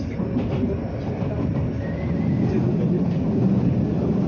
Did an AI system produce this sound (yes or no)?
no